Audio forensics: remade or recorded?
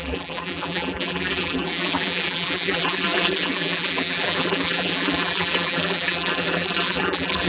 remade